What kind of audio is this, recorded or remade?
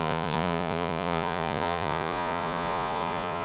remade